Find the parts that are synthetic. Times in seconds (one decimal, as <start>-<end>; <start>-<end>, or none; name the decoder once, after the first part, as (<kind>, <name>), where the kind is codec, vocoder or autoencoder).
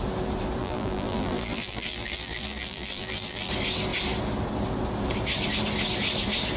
0.6-3.5 (vocoder, BigVGAN v2)